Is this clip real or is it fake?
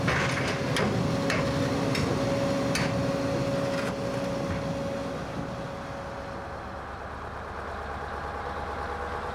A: real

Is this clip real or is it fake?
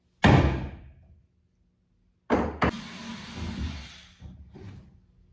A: real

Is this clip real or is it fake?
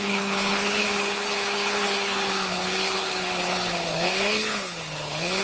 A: fake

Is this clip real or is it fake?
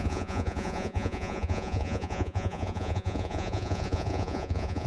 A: fake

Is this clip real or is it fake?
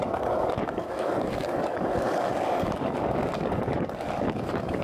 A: fake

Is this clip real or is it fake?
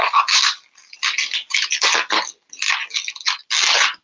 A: real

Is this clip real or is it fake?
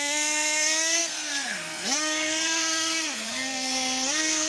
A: fake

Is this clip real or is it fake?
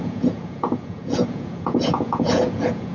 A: fake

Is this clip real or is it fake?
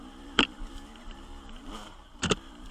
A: fake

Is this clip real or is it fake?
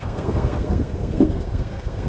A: fake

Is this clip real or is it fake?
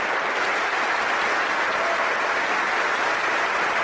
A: real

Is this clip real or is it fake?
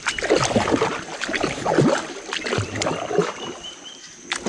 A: real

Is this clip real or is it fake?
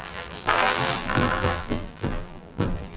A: fake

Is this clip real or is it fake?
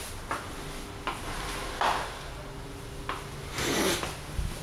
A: real